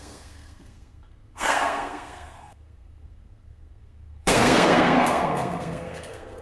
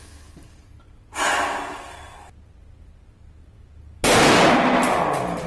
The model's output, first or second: first